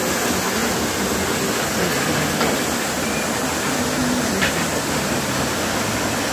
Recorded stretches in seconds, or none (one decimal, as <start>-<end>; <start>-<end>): 0.0-6.3